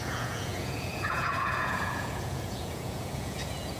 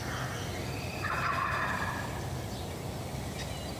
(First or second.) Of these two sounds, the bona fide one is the second